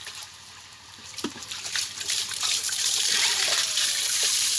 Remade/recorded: remade